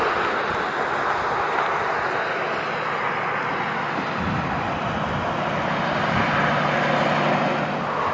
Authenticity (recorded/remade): recorded